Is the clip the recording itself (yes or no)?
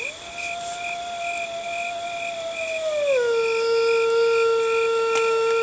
yes